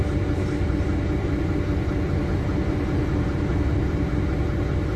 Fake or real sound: real